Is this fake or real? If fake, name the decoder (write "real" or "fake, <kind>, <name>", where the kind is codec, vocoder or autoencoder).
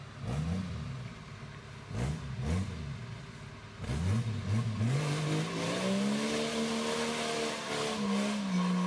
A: real